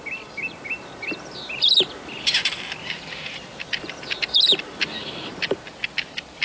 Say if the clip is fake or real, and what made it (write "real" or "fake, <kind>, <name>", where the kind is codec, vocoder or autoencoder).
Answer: fake, vocoder, BigVGAN v2